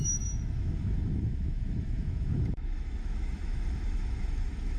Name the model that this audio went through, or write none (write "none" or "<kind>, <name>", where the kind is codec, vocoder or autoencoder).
autoencoder, DAC-VAE